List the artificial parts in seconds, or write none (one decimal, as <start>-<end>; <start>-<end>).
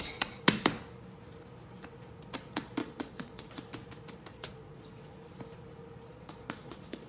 2.8-3.6; 4.3-5.2; 6.1-7.1